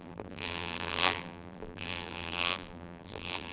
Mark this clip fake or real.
fake